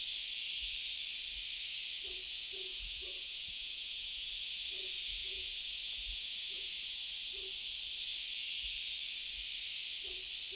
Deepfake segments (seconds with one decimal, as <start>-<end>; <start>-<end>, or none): 2.3-4.3; 5.2-7.2